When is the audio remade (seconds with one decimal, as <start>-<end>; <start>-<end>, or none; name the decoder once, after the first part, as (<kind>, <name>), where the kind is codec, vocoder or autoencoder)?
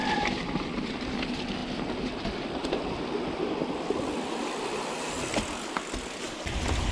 none